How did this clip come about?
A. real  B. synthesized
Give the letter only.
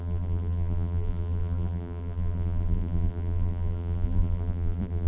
B